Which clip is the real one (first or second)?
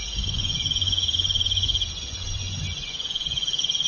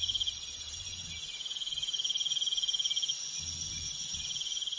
second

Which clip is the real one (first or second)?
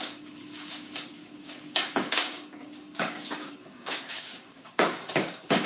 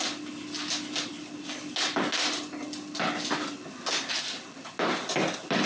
second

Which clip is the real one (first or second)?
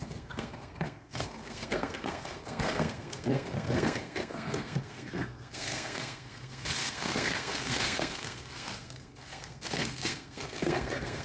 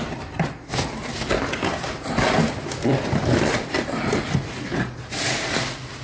second